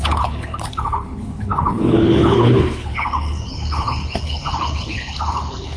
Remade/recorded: remade